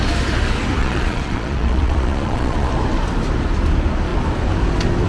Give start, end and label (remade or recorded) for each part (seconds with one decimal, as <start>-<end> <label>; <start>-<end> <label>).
0.0-0.8 recorded; 0.8-2.7 remade; 2.7-5.1 recorded

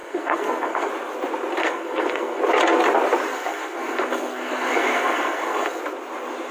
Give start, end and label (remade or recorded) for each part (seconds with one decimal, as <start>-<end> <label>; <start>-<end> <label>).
0.0-0.9 remade; 0.9-1.6 recorded; 1.6-2.4 remade; 2.4-3.3 recorded; 3.3-5.8 remade; 5.8-6.5 recorded